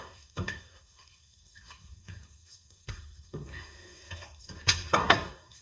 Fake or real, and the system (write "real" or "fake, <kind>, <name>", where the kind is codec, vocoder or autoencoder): fake, codec, SNAC